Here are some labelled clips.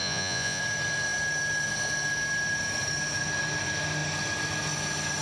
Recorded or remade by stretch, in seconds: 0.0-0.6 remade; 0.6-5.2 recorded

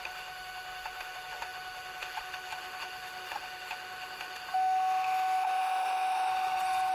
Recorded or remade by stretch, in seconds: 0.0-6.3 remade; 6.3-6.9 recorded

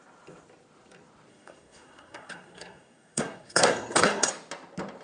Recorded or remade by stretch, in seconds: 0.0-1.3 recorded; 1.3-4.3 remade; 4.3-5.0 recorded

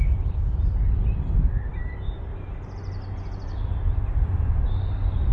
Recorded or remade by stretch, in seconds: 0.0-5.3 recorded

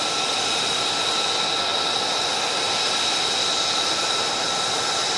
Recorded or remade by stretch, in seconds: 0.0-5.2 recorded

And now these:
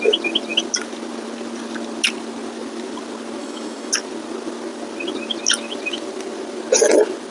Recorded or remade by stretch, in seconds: 0.0-3.4 recorded; 3.4-3.9 remade; 3.9-7.3 recorded

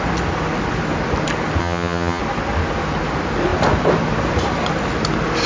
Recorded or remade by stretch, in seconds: 0.0-1.6 recorded; 1.6-2.2 remade; 2.2-5.5 recorded